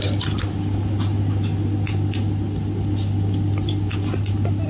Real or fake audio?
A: real